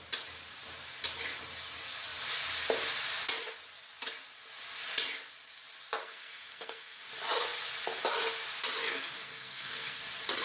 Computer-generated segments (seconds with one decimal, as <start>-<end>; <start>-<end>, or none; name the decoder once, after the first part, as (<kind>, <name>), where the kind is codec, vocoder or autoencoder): 6.0-7.0 (codec, SNAC); 8.8-10.0